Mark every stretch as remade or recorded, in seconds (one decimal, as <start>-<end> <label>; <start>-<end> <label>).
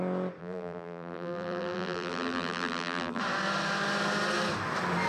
0.0-0.4 recorded; 0.4-3.2 remade; 3.2-5.1 recorded